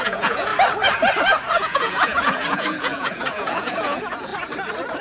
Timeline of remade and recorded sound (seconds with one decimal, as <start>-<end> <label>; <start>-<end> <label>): 0.0-0.5 remade; 0.5-1.6 recorded; 1.6-4.3 remade; 4.3-5.0 recorded